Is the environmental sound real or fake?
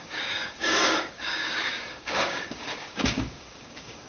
fake